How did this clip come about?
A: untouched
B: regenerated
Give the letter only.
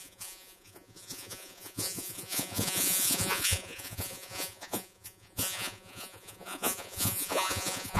B